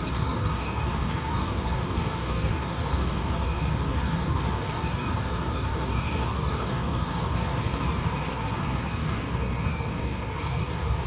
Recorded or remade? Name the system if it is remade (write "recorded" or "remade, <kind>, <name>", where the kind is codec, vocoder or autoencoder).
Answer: remade, codec, DAC